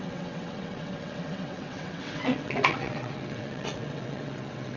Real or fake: fake